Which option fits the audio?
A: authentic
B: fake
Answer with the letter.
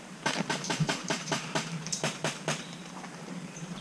B